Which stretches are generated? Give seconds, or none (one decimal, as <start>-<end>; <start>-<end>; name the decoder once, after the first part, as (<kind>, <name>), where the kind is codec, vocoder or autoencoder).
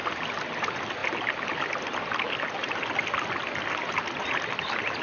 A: none